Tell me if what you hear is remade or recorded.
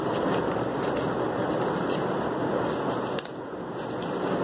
recorded